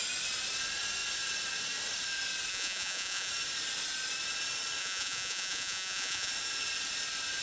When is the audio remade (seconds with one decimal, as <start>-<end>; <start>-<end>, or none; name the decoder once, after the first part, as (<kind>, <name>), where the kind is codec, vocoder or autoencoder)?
2.5-3.3 (vocoder, Vocos); 4.8-6.3